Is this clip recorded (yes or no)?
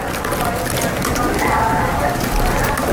yes